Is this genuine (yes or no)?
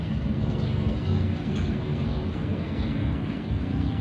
no